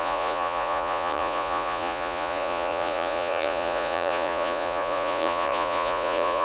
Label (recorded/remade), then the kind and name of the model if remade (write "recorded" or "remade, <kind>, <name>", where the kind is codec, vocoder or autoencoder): remade, vocoder, Vocos